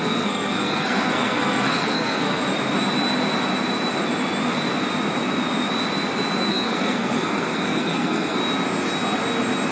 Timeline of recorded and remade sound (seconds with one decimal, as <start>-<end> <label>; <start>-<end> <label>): 0.0-2.5 remade; 2.5-6.5 recorded; 6.5-8.4 remade; 8.4-9.7 recorded